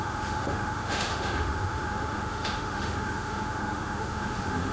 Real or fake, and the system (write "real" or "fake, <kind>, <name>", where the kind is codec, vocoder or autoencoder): fake, autoencoder, DAC-VAE